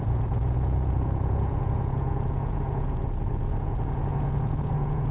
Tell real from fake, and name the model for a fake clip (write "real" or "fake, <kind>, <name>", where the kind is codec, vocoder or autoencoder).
fake, vocoder, Vocos